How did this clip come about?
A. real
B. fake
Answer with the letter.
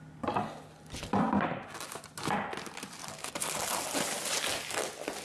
A